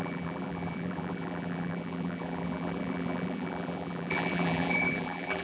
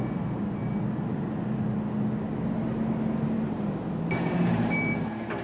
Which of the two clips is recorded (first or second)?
second